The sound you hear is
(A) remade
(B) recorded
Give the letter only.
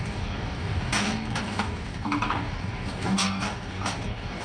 A